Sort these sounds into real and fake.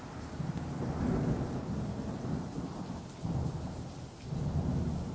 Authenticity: real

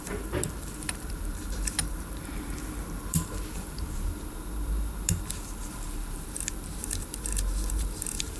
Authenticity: fake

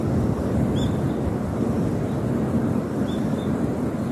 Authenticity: real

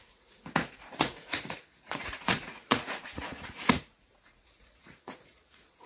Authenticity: fake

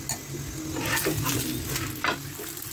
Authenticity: real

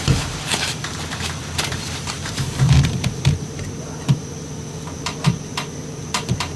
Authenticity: fake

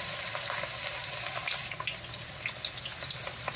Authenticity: real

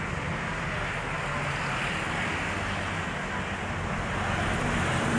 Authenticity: real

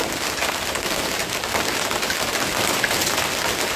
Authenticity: real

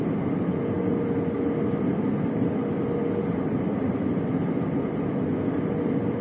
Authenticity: real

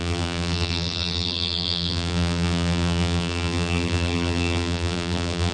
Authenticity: fake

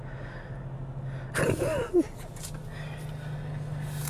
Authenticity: real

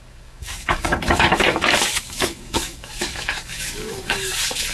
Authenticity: fake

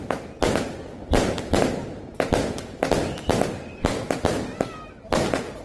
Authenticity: real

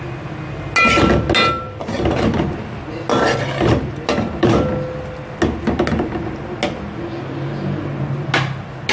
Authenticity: real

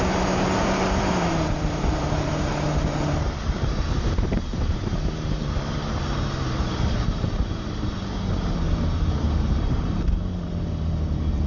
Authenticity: fake